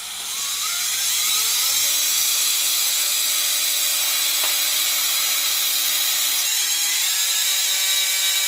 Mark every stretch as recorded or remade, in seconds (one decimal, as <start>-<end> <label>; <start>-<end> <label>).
0.0-2.1 recorded; 2.1-3.3 remade; 3.3-8.5 recorded